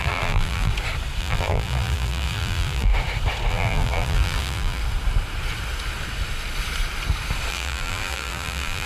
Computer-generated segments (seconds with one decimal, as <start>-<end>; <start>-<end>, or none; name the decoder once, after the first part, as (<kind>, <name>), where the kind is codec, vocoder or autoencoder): 0.0-0.7 (vocoder, BigVGAN v2); 1.2-2.9; 3.5-4.8; 7.5-8.9